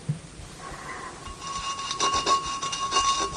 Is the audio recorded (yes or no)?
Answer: yes